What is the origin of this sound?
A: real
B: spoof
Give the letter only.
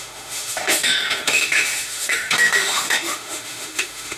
B